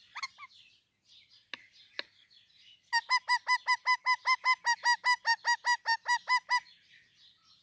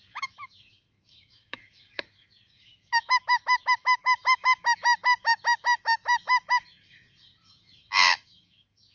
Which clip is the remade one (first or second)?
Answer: second